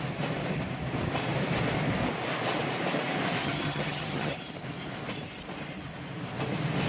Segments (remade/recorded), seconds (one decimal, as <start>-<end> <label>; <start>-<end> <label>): 0.0-3.4 recorded; 3.4-4.4 remade; 4.4-6.9 recorded